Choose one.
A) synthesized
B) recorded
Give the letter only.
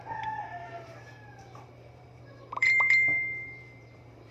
A